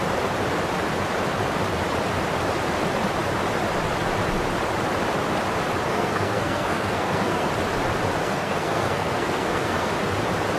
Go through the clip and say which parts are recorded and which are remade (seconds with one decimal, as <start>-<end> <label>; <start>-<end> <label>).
0.0-5.9 recorded; 5.9-7.5 remade; 7.5-8.2 recorded; 8.2-9.9 remade; 9.9-10.6 recorded